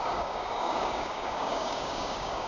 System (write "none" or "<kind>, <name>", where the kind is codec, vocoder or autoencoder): codec, DAC